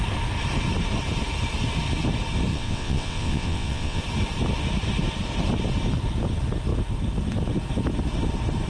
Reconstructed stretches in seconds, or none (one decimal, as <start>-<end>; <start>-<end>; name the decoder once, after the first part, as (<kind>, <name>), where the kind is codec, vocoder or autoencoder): 2.5-4.0 (vocoder, WaveNeXt)